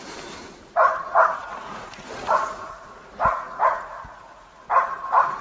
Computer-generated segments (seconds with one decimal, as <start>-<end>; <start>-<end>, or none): 1.4-4.6